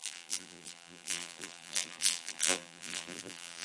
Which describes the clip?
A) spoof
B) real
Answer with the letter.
A